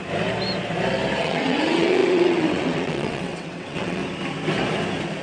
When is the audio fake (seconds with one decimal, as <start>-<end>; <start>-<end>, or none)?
1.2-4.0